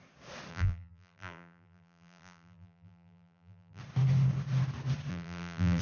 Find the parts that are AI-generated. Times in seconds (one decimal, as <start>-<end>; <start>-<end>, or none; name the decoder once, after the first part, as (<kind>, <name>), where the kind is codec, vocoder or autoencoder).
0.5-3.8 (vocoder, BigVGAN v2); 5.1-5.8